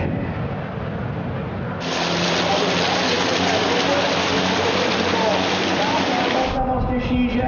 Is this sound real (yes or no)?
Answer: yes